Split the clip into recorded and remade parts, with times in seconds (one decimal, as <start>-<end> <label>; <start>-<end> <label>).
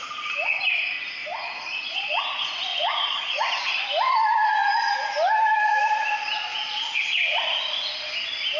0.0-1.2 recorded; 1.2-2.2 remade; 2.2-2.7 recorded; 2.7-3.4 remade; 3.4-6.5 recorded; 6.5-7.4 remade; 7.4-8.6 recorded